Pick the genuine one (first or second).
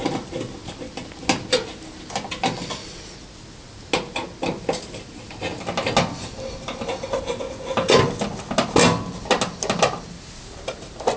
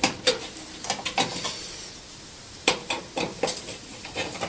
first